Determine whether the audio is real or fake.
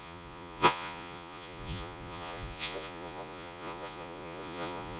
fake